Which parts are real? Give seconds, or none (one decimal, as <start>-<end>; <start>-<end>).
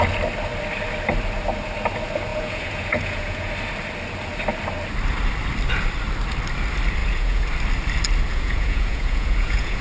0.0-2.3; 3.5-7.0; 7.5-8.3